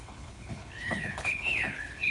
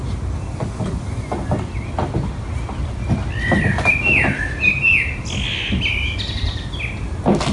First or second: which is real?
second